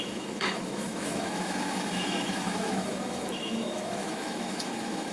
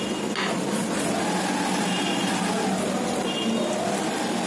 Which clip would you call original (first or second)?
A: second